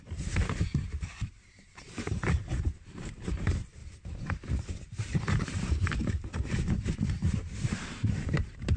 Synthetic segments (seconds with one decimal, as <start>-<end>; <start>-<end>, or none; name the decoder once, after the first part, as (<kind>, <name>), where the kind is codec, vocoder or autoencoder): 0.0-3.8 (vocoder, BigVGAN v2); 4.5-8.8